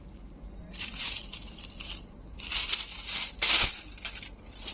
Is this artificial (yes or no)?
no